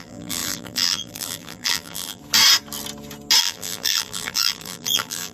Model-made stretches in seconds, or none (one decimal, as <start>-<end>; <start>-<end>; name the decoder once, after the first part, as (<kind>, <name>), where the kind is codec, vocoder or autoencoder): 0.0-2.2 (vocoder, BigVGAN v2); 3.4-5.3